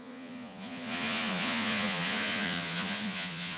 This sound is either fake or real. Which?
fake